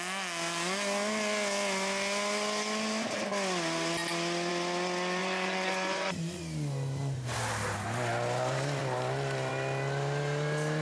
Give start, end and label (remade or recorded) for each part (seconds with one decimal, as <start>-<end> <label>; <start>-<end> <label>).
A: 0.0-5.2 recorded; 5.2-6.4 remade; 6.4-10.8 recorded